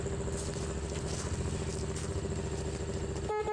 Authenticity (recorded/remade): recorded